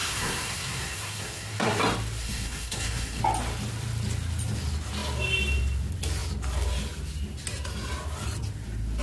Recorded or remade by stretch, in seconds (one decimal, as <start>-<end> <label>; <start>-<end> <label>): 0.0-1.8 remade; 1.8-2.2 recorded; 2.2-3.2 remade; 3.2-9.0 recorded